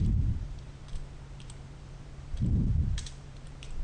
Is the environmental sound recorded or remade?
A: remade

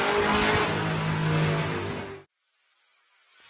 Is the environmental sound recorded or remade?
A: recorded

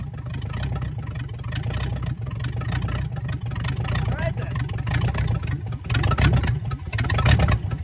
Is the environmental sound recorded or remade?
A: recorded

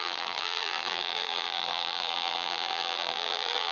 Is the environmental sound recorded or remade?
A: remade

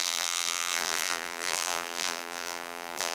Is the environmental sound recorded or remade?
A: remade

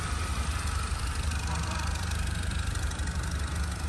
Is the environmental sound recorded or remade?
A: remade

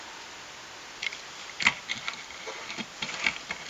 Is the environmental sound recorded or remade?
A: recorded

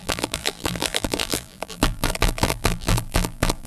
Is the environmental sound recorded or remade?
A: remade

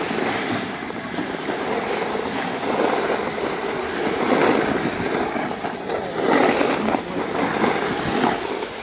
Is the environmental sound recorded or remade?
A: recorded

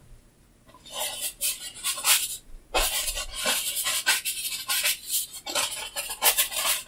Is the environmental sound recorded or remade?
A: remade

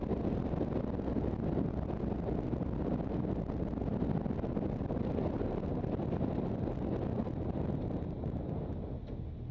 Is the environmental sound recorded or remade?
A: recorded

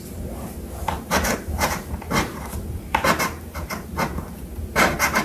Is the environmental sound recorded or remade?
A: remade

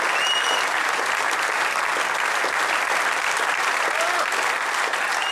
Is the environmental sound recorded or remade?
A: recorded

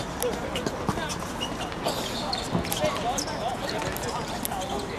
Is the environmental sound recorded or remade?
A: recorded